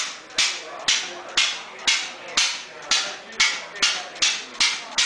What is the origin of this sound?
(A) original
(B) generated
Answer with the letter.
A